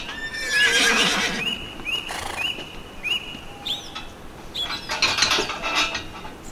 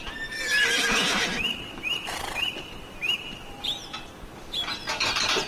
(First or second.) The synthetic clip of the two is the second